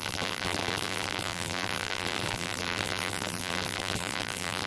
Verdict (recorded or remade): remade